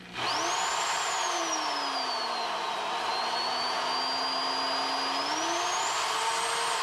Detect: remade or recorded recorded